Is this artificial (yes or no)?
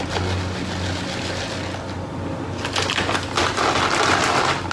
no